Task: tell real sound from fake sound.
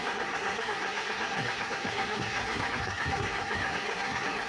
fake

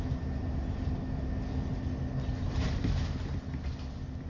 real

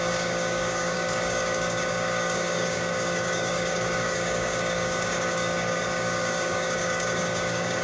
fake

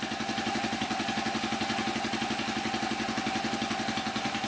real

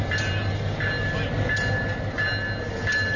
real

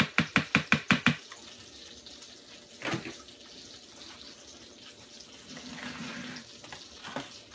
real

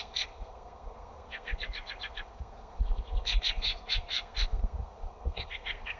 fake